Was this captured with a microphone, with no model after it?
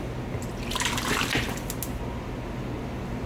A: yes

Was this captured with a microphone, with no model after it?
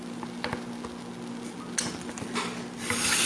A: yes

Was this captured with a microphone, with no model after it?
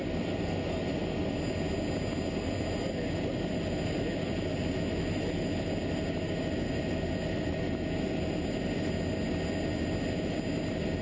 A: yes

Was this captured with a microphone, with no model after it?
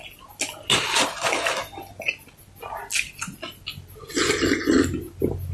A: yes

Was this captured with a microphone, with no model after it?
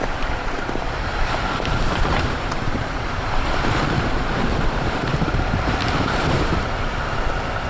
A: no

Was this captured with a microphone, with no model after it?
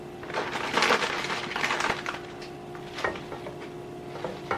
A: yes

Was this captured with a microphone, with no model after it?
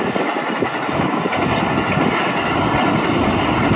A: yes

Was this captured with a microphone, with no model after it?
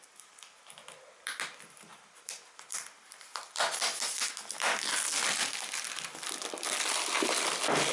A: yes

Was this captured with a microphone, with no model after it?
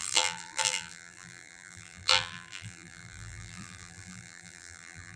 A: no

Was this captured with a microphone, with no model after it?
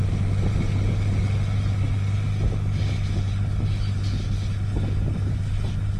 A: yes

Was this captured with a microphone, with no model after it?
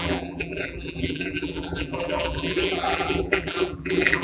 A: no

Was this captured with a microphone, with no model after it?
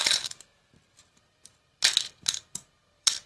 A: no